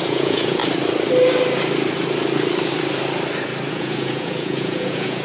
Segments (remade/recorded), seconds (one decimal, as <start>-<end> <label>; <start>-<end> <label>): 0.0-0.6 remade; 0.6-3.7 recorded; 3.7-5.2 remade